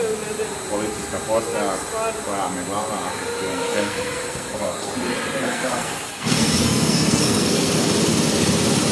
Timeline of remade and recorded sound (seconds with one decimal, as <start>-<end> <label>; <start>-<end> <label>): 0.0-3.5 recorded; 3.5-4.9 remade; 4.9-5.4 recorded; 5.4-7.7 remade; 7.7-8.9 recorded